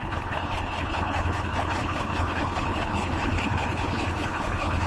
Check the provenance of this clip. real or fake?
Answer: fake